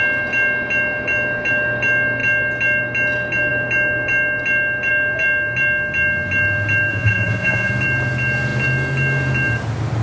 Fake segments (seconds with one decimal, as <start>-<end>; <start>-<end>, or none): 6.9-7.7